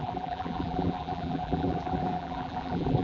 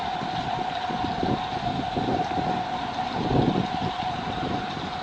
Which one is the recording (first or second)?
second